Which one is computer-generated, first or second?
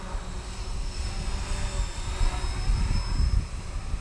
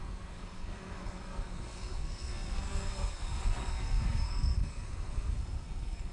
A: second